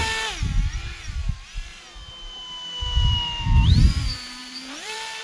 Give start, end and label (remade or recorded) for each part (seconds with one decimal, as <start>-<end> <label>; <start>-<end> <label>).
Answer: 0.0-0.7 recorded; 0.7-1.7 remade; 1.7-3.1 recorded; 3.1-5.2 remade